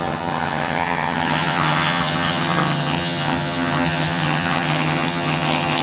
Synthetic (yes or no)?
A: yes